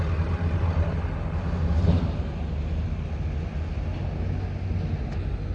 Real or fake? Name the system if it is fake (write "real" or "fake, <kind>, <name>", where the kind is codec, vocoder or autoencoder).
real